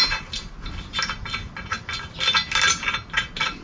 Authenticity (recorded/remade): recorded